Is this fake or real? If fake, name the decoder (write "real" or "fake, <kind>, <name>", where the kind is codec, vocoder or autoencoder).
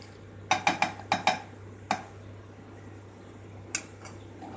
real